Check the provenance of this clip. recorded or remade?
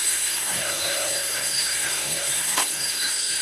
remade